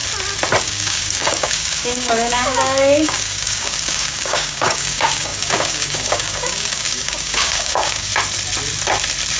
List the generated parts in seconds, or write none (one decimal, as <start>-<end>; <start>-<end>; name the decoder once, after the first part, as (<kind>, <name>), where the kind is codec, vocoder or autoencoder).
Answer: 0.6-8.1 (codec, DAC)